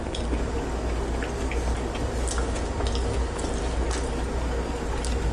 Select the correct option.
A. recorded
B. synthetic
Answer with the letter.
A